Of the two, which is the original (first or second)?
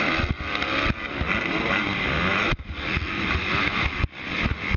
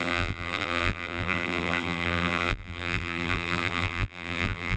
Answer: first